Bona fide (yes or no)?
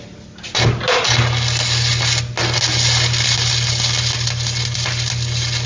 yes